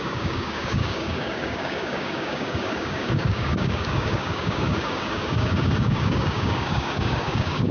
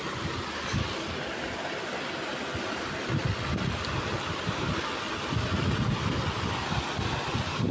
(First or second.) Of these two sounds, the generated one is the first